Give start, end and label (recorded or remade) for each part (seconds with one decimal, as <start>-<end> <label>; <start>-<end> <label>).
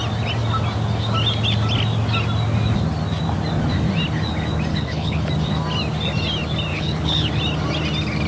0.0-4.7 recorded; 4.7-5.3 remade; 5.3-6.7 recorded; 6.7-7.3 remade; 7.3-8.3 recorded